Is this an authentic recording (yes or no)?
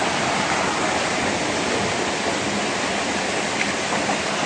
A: yes